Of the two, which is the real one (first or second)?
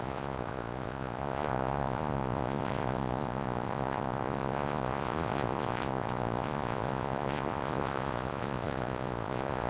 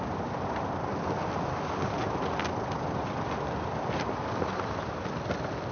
second